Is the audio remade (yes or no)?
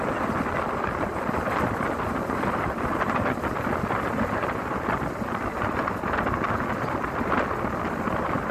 no